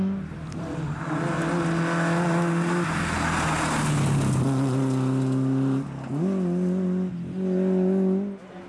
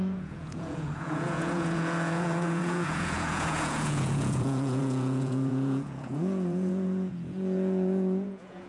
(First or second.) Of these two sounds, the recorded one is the first